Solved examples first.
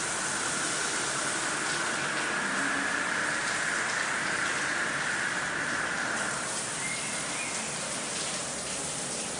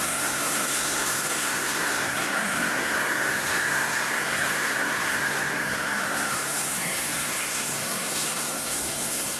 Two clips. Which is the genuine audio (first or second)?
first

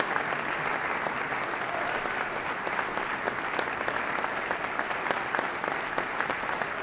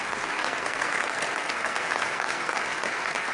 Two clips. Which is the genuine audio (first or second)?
first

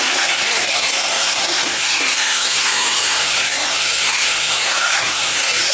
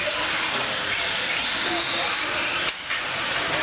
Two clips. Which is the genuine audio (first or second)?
second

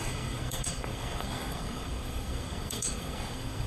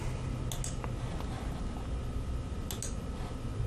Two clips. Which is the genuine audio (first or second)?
second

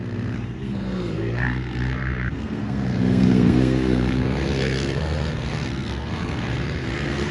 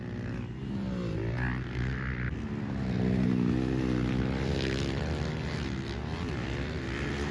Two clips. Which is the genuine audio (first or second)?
second